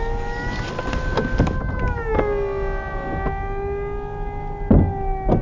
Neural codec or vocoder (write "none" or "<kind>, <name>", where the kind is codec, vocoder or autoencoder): none